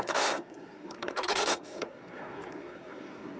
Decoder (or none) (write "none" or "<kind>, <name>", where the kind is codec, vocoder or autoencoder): codec, SNAC